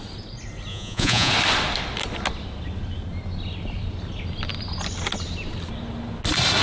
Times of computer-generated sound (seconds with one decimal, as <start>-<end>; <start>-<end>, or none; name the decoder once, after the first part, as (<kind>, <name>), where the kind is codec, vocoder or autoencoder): 0.7-1.3 (vocoder, Vocos)